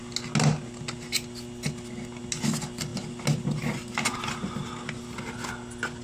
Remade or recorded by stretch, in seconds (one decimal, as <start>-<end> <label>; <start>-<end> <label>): 0.0-6.0 recorded